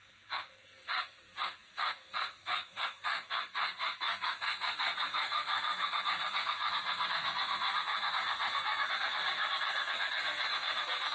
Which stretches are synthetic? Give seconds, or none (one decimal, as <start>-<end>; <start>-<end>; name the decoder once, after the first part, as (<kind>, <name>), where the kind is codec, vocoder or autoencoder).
0.0-11.1 (codec, SNAC)